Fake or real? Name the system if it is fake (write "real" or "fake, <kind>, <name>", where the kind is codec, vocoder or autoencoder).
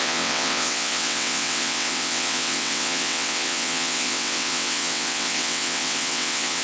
fake, vocoder, WaveNeXt